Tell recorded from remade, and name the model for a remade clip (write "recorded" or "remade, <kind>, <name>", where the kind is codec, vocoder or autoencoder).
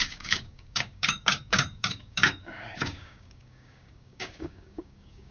remade, codec, DAC